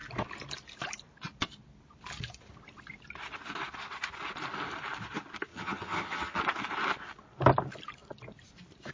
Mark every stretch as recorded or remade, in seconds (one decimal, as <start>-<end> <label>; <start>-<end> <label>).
0.0-5.5 recorded; 5.5-6.4 remade; 6.4-8.9 recorded